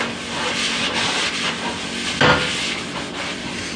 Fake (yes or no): no